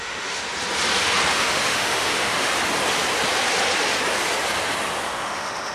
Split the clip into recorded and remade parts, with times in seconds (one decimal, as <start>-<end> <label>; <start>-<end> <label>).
0.0-0.4 remade; 0.4-1.3 recorded; 1.3-2.5 remade; 2.5-5.1 recorded; 5.1-5.7 remade